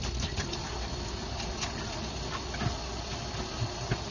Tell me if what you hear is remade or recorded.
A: recorded